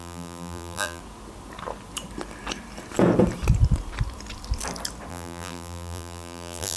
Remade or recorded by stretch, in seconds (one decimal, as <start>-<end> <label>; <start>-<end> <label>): 0.0-1.0 remade; 1.0-5.1 recorded; 5.1-6.8 remade

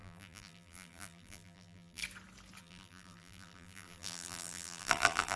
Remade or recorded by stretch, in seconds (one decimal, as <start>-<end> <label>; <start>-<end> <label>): 0.0-2.0 remade; 2.0-2.6 recorded; 2.6-5.4 remade

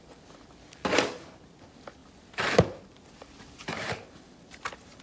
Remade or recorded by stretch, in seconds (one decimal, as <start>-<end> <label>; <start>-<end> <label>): 0.0-2.0 recorded; 2.0-2.8 remade; 2.8-3.6 recorded; 3.6-4.1 remade; 4.1-5.0 recorded

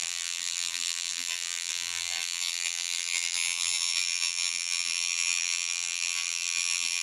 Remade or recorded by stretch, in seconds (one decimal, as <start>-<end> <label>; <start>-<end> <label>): 0.0-7.0 remade

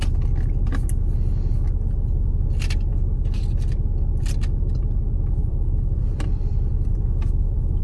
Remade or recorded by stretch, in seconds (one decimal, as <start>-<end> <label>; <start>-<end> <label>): 0.0-5.4 recorded; 5.4-7.8 remade

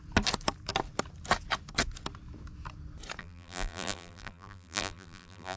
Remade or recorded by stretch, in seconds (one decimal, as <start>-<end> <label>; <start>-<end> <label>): 0.0-3.2 recorded; 3.2-5.6 remade

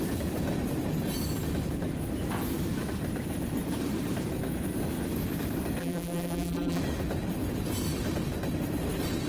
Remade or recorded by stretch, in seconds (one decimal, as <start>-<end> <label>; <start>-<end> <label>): 0.0-5.8 recorded; 5.8-6.8 remade; 6.8-9.3 recorded

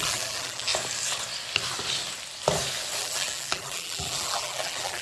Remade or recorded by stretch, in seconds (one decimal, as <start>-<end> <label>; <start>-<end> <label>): 0.0-0.7 remade; 0.7-3.0 recorded; 3.0-5.0 remade